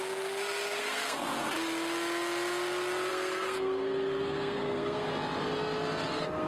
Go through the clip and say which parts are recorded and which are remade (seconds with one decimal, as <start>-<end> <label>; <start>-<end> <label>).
0.0-1.3 remade; 1.3-3.1 recorded; 3.1-5.1 remade; 5.1-6.1 recorded; 6.1-6.5 remade